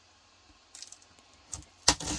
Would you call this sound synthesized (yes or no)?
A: no